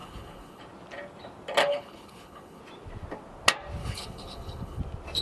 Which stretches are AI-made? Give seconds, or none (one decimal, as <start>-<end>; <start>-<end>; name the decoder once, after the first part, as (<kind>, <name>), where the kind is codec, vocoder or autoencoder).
0.0-0.6 (codec, HILCodec); 1.6-2.6; 3.8-4.8